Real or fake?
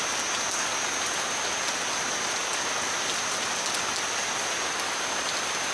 real